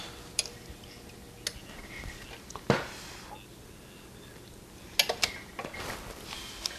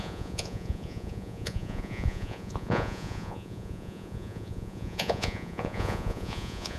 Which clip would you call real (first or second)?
first